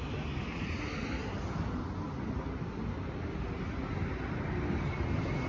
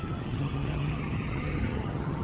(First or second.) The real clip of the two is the first